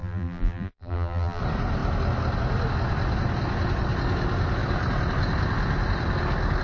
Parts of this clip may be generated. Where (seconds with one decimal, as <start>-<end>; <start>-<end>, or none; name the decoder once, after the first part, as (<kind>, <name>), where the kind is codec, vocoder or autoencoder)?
0.0-1.4 (vocoder, BigVGAN v2)